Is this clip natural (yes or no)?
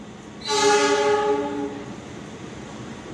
yes